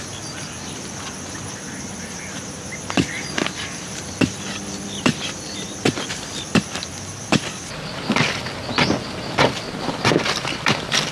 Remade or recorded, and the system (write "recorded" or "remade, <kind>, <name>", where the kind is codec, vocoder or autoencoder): remade, vocoder, BigVGAN v2